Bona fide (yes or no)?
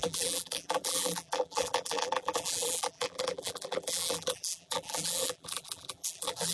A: no